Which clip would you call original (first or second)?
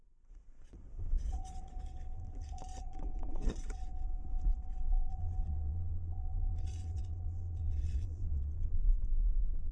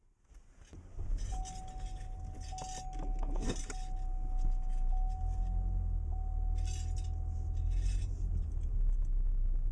second